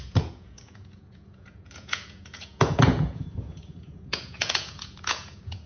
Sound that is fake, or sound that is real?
fake